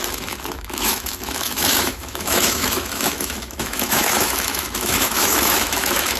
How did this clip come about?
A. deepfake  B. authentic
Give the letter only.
A